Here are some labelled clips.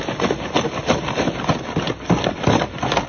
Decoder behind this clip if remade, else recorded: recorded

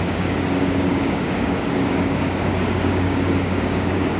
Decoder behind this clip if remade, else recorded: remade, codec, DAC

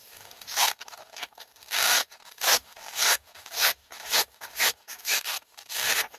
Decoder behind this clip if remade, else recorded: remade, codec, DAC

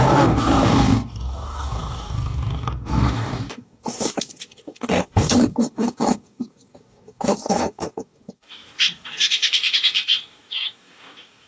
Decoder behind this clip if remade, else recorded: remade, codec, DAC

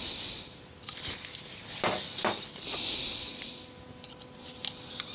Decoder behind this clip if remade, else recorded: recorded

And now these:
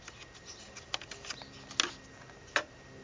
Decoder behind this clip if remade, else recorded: recorded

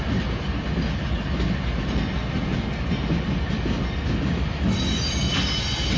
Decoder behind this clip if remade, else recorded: recorded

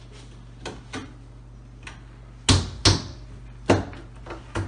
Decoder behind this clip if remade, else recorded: recorded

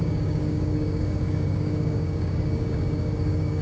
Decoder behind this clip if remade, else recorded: remade, codec, DAC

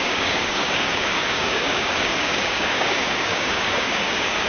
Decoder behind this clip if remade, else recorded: remade, codec, DAC